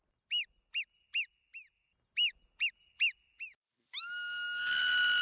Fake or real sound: real